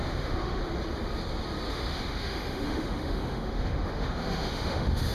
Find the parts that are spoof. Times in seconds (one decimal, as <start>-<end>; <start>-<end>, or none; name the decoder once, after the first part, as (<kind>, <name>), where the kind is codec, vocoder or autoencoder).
0.0-0.6 (autoencoder, DAC-VAE); 1.7-5.1